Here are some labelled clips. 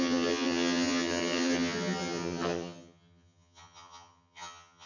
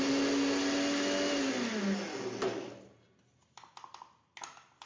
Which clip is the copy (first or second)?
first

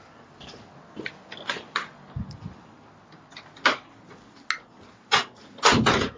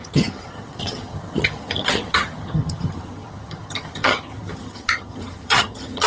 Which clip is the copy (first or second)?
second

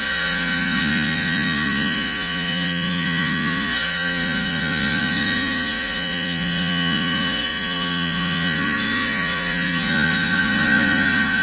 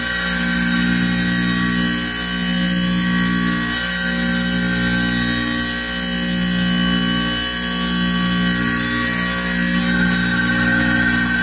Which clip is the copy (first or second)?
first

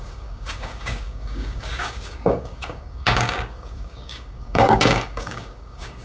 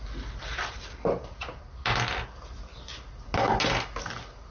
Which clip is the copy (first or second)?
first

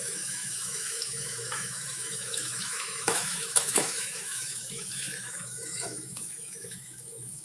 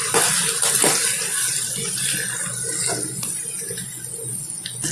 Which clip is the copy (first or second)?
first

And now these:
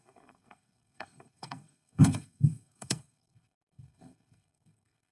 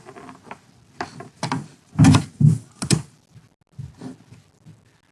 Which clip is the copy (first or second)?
first